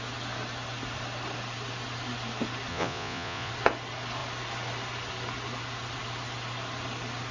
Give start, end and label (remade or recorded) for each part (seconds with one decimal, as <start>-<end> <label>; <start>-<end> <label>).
0.0-2.7 recorded; 2.7-3.5 remade; 3.5-7.3 recorded